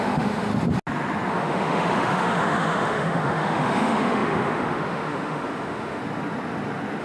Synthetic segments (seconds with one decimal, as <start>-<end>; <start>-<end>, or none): 0.0-0.5; 1.3-6.0